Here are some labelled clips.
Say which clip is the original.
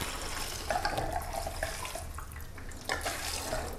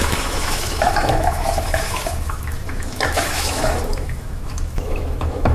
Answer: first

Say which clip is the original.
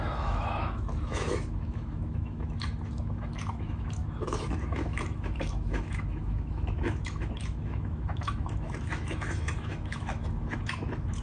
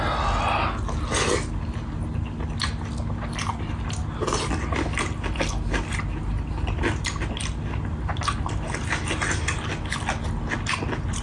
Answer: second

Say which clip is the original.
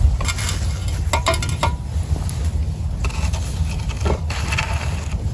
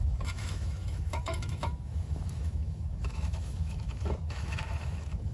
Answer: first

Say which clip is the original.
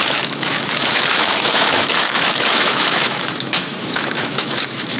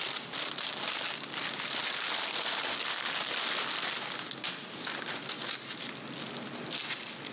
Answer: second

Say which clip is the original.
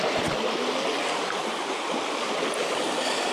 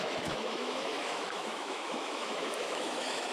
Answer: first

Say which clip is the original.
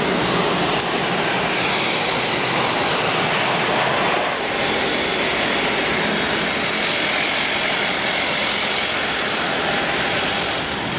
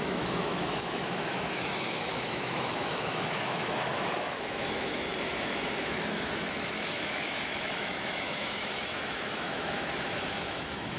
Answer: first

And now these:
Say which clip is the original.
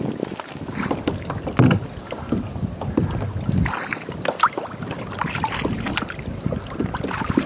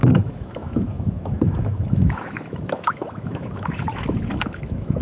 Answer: first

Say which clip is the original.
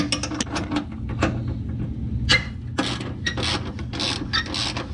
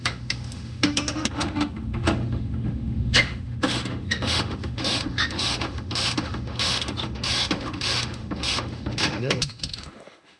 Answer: first